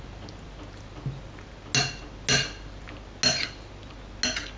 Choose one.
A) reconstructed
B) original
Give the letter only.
B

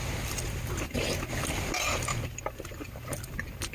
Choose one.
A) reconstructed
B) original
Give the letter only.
B